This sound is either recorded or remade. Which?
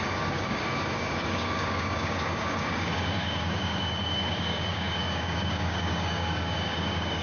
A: remade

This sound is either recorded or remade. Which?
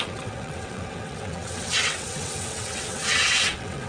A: remade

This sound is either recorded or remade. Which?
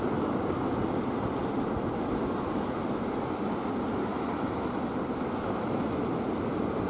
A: recorded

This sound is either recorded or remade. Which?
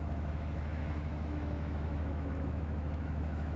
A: remade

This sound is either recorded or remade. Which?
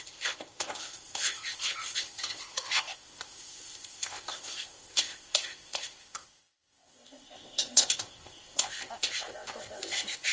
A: remade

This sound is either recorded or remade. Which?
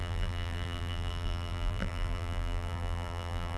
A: remade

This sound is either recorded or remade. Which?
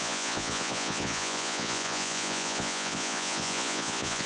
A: remade